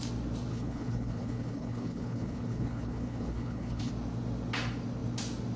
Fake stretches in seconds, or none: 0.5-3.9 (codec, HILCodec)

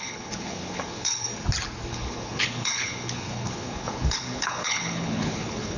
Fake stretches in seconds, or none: 0.0-1.3 (codec, HILCodec); 1.9-5.8